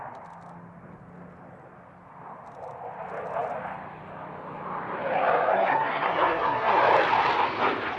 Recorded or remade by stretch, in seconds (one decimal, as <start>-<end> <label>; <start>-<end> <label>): 0.0-5.5 recorded; 5.5-6.8 remade; 6.8-8.0 recorded